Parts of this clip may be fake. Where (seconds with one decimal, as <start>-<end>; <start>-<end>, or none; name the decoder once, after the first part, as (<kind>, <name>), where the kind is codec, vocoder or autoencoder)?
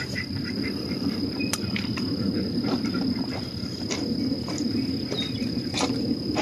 0.0-3.8 (vocoder, BigVGAN v2)